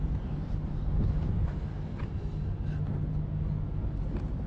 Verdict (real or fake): real